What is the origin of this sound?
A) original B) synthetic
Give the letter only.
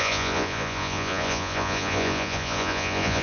B